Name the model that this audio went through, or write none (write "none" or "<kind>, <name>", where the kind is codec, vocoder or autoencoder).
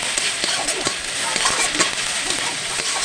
none